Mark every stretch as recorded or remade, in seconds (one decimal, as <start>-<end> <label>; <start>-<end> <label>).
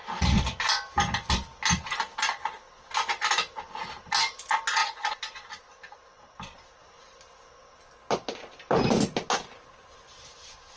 0.0-10.8 recorded